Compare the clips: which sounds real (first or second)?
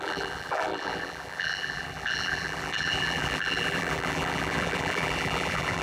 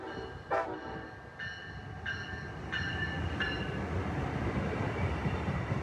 second